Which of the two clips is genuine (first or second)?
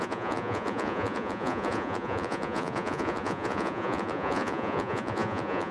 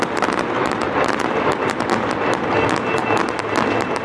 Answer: second